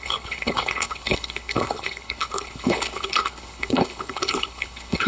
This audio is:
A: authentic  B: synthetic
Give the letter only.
B